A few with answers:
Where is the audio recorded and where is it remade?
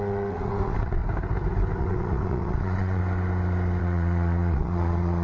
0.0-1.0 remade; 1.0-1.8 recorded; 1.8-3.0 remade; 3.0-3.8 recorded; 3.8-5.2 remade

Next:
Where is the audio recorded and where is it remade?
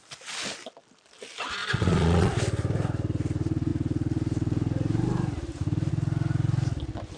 0.0-1.6 recorded; 1.6-2.3 remade; 2.3-7.2 recorded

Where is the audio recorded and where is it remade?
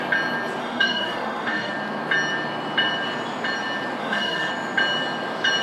0.0-0.6 recorded; 0.6-1.7 remade; 1.7-4.0 recorded; 4.0-4.5 remade; 4.5-5.6 recorded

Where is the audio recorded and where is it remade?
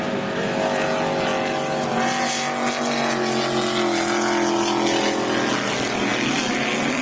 0.0-7.0 recorded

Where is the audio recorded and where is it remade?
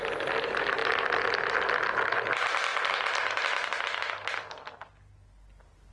0.0-5.9 recorded